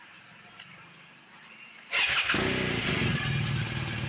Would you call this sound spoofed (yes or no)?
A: no